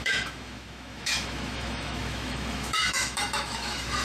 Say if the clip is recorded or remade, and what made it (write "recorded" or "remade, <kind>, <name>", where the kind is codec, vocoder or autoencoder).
remade, autoencoder, DAC-VAE